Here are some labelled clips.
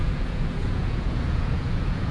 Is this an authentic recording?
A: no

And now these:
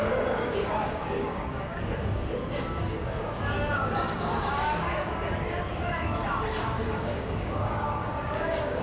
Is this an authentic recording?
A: no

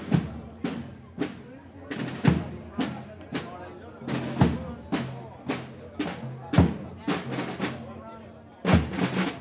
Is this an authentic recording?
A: yes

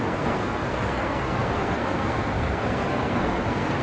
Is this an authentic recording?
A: no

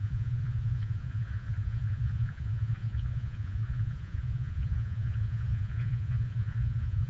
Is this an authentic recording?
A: no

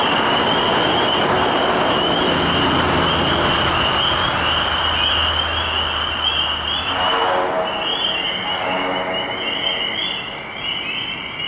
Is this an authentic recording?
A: yes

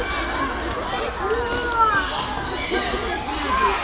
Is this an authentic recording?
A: yes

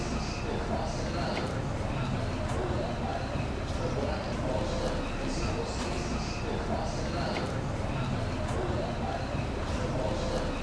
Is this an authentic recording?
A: yes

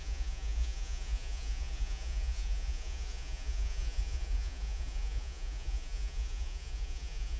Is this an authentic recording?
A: no